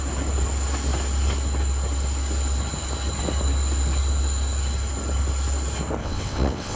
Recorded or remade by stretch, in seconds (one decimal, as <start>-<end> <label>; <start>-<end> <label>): 0.0-6.0 recorded; 6.0-6.8 remade